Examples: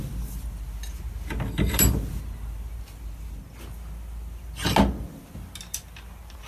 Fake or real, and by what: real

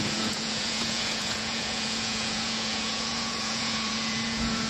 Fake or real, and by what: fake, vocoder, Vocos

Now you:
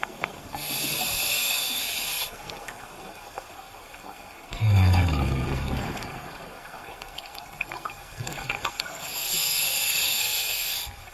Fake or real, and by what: fake, codec, SNAC